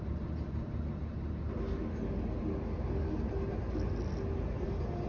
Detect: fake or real real